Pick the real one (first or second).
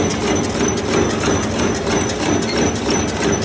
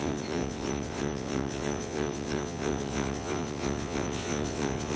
first